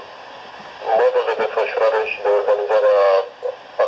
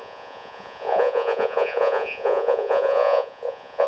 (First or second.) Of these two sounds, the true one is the first